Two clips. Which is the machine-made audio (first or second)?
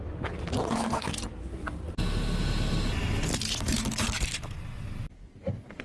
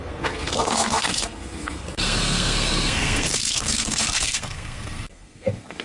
second